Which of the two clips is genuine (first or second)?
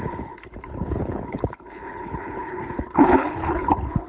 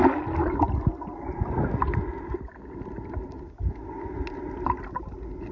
second